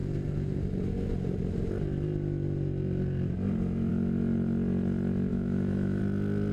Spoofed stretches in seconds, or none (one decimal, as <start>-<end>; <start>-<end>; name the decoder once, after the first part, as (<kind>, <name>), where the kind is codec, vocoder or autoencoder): 5.3-6.0 (autoencoder, DAC-VAE)